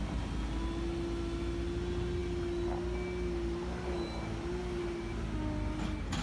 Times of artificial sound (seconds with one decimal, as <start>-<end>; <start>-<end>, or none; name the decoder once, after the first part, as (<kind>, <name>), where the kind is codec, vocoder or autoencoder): none